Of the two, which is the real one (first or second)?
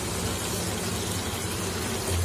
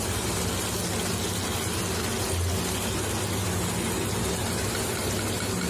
second